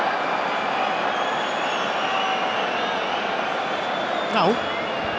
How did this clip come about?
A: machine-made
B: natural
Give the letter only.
B